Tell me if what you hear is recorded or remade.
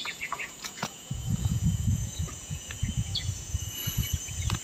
remade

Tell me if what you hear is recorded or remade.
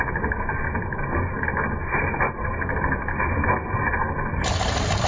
recorded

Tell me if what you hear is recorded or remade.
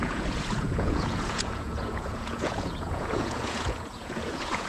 remade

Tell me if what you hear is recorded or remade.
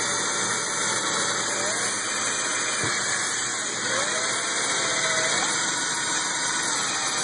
recorded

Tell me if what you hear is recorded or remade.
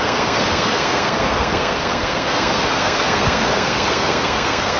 remade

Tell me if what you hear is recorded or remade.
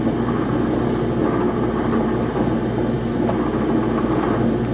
recorded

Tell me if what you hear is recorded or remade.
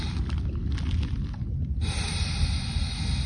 recorded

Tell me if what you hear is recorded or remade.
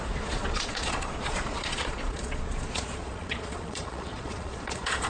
remade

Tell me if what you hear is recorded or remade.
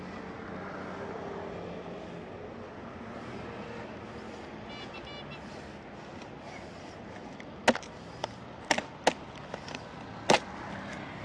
recorded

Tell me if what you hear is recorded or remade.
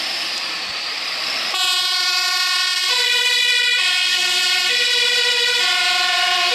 remade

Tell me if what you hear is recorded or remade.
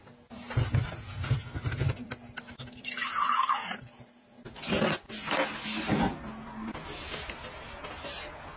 recorded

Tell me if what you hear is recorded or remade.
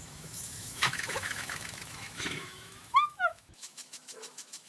remade